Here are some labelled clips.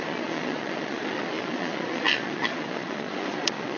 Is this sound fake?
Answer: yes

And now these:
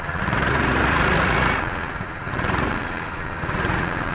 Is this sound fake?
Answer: yes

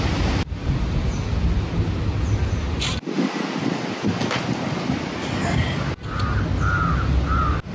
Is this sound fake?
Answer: no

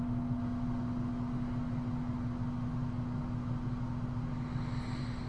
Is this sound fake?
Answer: no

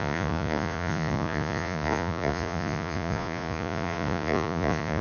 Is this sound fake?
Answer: yes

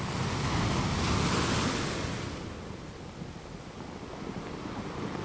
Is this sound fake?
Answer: no